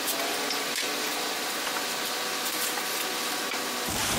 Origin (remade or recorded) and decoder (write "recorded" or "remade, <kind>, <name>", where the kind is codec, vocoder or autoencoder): remade, vocoder, BigVGAN v2